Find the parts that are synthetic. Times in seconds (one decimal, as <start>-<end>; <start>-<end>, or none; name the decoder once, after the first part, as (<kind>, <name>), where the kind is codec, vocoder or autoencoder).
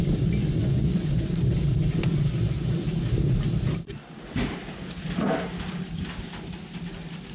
0.6-1.1 (vocoder, Vocos)